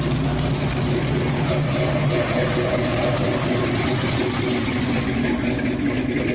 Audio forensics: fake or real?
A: real